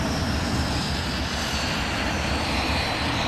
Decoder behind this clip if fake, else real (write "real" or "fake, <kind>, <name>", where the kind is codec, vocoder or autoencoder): real